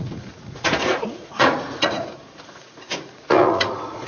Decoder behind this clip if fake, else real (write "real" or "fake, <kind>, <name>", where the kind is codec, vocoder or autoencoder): fake, vocoder, Vocos